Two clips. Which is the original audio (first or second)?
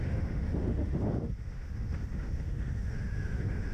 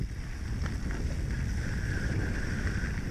second